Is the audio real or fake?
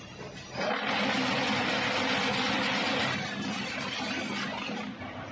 real